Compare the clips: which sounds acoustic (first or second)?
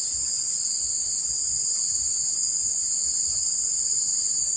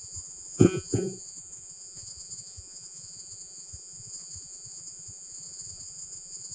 first